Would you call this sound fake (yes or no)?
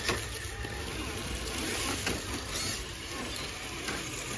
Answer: no